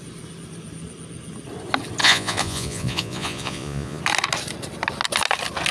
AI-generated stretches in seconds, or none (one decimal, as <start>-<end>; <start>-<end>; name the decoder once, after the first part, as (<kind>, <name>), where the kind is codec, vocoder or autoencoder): 2.0-4.0 (vocoder, Vocos)